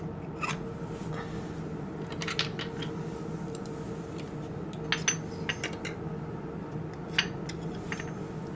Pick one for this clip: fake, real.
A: real